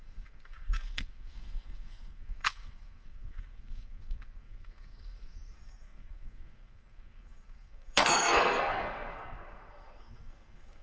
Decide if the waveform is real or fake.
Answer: fake